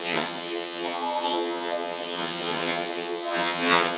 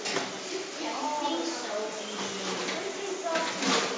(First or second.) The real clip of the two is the second